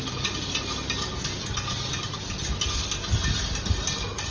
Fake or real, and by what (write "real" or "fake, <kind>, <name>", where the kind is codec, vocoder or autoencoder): real